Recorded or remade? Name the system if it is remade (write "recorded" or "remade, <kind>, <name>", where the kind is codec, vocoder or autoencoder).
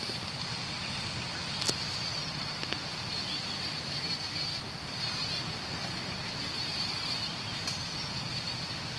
recorded